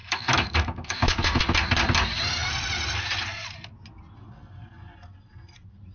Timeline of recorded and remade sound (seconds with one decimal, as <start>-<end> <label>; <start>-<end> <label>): 0.0-1.4 remade; 1.4-5.9 recorded